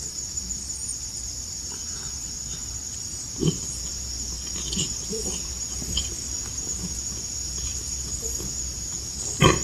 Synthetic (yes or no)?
no